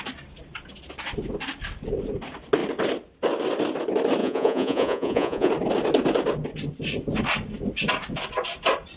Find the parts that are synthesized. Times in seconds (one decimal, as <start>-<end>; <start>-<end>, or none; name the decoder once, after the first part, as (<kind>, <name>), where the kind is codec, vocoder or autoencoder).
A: 4.2-5.5 (vocoder, Vocos)